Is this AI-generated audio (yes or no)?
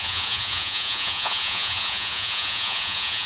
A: yes